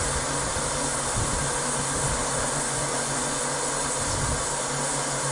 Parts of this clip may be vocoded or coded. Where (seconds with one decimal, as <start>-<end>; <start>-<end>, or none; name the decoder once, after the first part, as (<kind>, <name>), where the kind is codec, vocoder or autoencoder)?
2.3-3.4 (vocoder, Vocos)